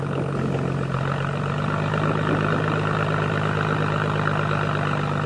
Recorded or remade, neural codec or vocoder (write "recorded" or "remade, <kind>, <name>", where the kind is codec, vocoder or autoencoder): recorded